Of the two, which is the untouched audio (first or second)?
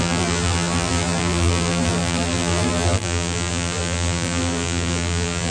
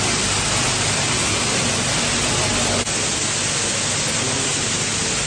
second